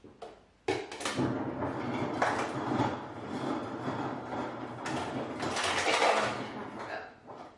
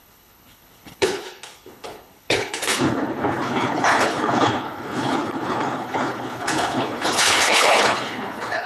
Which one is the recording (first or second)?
first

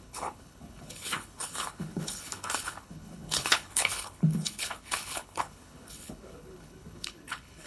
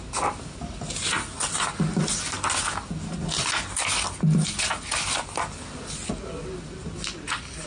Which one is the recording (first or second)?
second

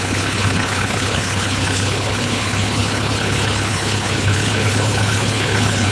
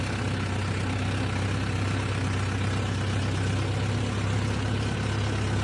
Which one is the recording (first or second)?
second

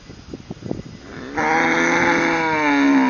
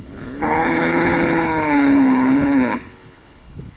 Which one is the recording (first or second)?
first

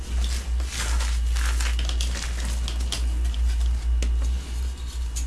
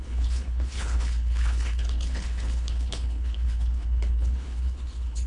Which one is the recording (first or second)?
first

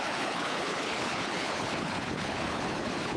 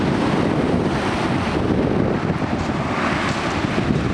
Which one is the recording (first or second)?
second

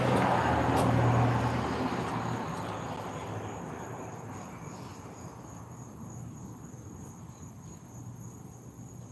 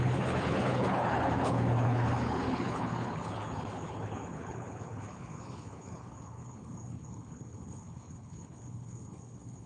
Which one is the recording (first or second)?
first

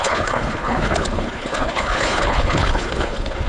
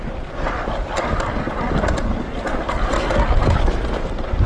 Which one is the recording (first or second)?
second